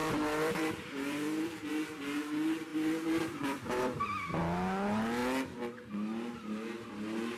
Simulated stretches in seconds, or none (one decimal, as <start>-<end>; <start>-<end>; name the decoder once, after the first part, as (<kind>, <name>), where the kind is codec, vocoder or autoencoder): 0.0-1.7 (vocoder, BigVGAN v2); 2.7-4.4

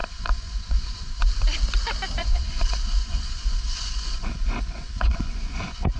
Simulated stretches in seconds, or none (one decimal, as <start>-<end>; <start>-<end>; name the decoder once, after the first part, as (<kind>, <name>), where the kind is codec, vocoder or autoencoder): 0.0-1.3 (vocoder, Vocos); 2.2-6.0